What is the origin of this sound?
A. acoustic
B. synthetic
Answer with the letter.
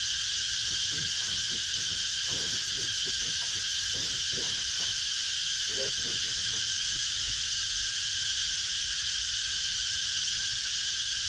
B